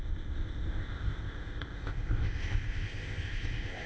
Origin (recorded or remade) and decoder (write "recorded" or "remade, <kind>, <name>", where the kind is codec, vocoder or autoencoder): remade, codec, ZipCodec